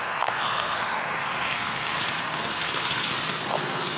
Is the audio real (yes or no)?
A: no